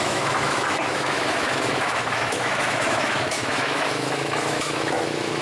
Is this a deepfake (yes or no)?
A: yes